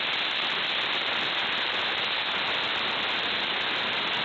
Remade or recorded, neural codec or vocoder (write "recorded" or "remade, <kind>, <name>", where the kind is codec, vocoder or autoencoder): recorded